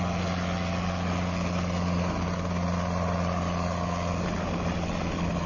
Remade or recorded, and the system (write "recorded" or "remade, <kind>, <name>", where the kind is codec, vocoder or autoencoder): recorded